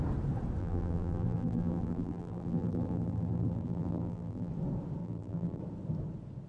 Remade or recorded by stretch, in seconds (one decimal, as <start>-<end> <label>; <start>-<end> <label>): 0.0-0.6 recorded; 0.6-4.5 remade; 4.5-5.0 recorded; 5.0-5.6 remade; 5.6-6.5 recorded